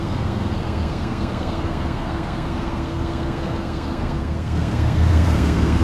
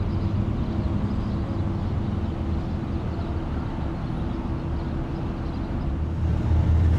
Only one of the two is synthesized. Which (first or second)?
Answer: first